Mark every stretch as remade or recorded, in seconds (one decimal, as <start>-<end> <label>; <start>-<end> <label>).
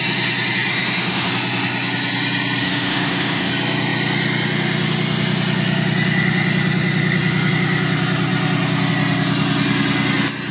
0.0-0.7 recorded; 0.7-1.3 remade; 1.3-2.6 recorded; 2.6-3.5 remade; 3.5-10.5 recorded